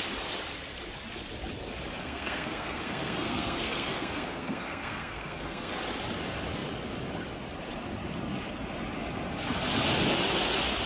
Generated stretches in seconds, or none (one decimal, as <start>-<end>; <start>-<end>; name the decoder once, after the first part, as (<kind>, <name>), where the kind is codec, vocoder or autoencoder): 2.0-5.7 (codec, SNAC)